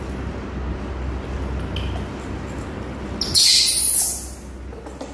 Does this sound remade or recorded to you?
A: recorded